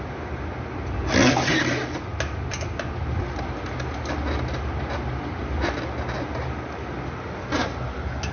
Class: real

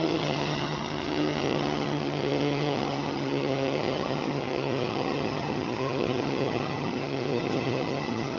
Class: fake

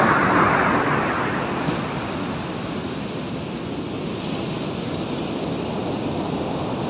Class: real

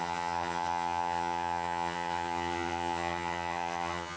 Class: fake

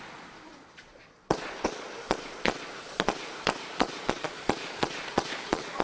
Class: fake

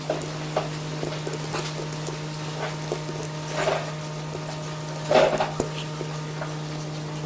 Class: real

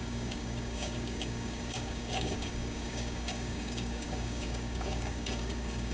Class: fake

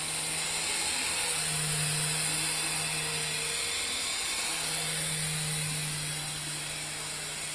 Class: real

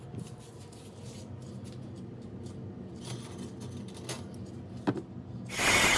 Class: real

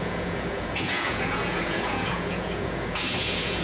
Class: fake